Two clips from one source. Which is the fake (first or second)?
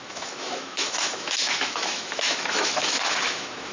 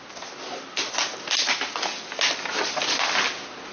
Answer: first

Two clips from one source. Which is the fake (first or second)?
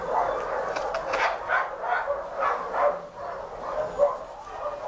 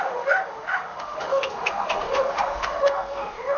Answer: second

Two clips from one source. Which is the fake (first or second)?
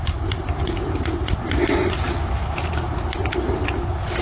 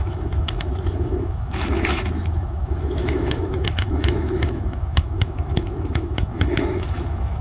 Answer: second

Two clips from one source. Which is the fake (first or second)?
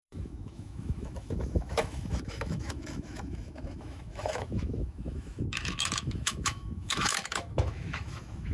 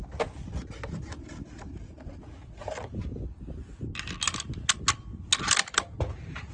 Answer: first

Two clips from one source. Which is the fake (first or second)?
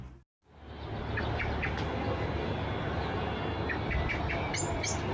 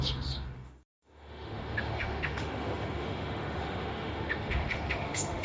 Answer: second